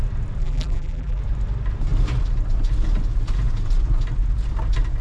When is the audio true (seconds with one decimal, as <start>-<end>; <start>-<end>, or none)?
0.0-0.4; 1.2-5.0